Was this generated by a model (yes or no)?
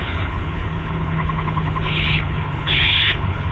yes